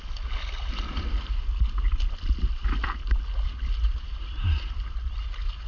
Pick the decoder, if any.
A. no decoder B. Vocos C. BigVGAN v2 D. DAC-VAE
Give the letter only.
A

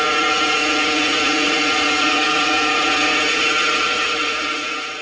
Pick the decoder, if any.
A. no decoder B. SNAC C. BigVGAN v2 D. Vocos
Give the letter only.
D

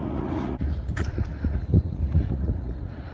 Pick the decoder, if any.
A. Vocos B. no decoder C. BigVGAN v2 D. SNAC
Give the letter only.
A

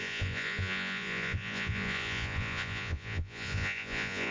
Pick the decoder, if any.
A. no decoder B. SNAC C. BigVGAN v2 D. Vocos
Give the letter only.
D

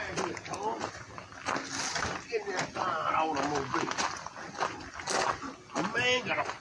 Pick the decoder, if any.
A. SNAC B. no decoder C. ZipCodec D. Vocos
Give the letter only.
B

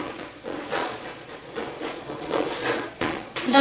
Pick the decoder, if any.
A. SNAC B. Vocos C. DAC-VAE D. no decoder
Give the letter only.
B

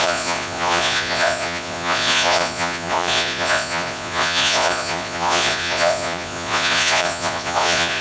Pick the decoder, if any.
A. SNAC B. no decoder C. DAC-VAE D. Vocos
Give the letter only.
D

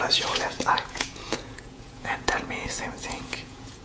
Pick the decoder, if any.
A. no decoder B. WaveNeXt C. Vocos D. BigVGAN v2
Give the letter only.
C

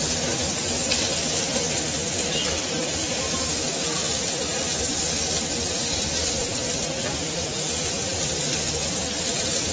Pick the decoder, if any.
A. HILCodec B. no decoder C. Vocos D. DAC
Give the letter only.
B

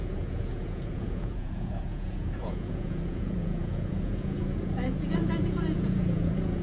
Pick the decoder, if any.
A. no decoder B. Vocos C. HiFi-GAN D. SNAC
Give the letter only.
B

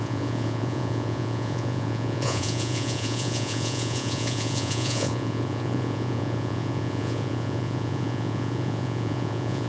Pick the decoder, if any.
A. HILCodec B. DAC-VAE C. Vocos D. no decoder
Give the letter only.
C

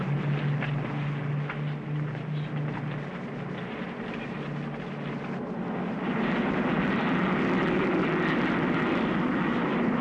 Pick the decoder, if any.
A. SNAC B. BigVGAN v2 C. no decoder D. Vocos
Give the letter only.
C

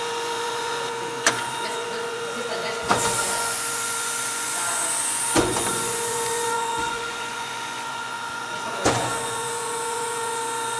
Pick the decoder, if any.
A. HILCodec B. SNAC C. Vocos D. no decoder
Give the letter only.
C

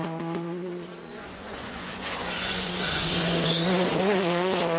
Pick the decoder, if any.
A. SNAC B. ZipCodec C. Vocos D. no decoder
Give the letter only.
C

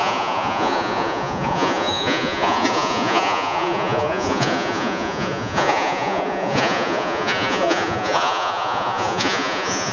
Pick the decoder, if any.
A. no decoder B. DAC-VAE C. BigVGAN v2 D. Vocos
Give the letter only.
D